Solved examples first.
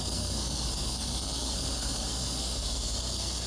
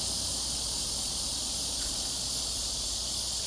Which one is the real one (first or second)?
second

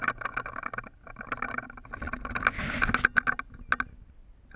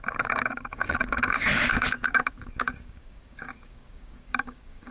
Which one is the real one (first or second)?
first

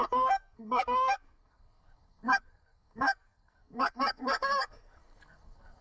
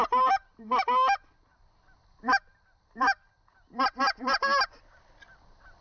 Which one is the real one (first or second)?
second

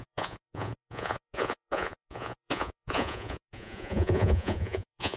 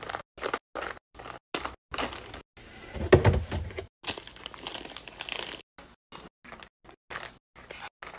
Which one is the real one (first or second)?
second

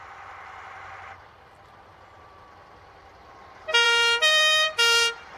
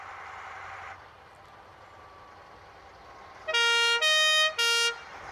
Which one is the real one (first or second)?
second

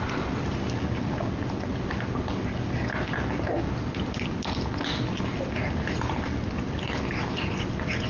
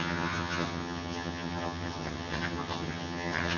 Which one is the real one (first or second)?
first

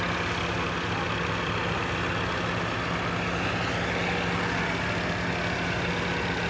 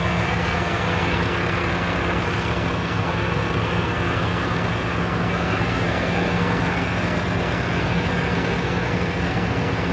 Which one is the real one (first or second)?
first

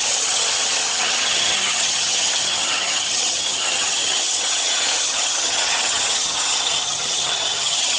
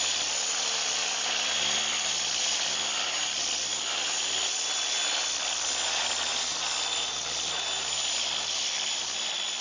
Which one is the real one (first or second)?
second